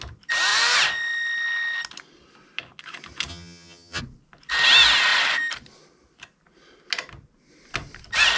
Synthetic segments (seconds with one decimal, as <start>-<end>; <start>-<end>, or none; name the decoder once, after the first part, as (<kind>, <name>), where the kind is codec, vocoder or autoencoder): 3.3-4.0 (vocoder, HiFi-GAN)